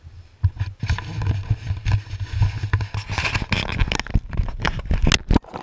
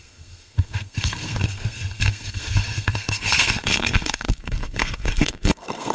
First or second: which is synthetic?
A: second